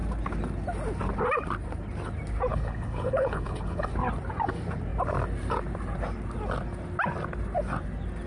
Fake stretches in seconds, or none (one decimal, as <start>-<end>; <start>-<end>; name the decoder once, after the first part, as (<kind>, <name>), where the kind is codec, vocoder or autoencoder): 2.5-3.9 (codec, HILCodec)